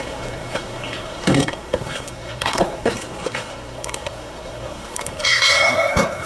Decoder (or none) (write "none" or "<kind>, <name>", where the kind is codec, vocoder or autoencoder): codec, SNAC